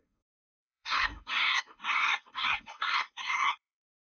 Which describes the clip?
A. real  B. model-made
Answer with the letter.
B